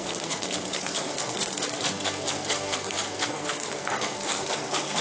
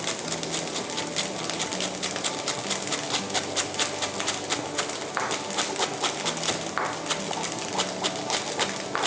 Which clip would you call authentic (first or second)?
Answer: second